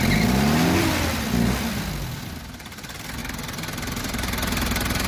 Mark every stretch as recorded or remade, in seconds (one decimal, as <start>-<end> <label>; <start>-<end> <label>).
0.0-5.1 recorded